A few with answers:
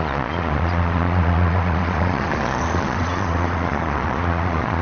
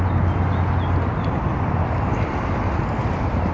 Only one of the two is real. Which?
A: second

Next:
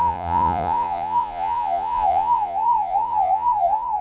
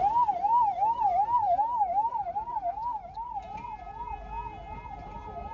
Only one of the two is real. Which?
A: second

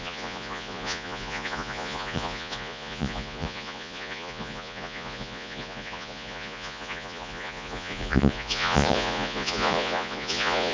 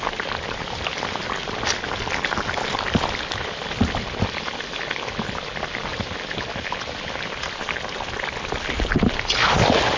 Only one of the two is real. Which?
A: second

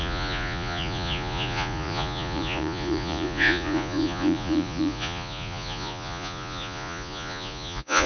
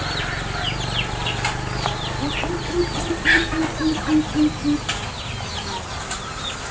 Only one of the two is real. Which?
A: second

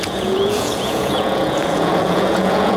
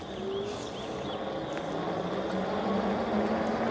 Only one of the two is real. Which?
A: second